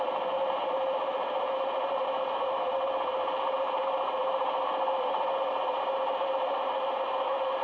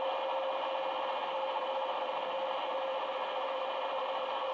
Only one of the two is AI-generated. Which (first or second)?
first